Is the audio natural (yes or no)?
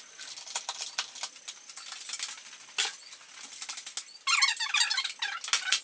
yes